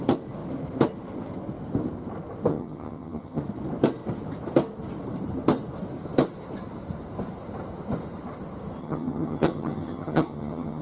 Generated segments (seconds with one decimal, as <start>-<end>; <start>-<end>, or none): 2.5-3.4; 8.8-10.8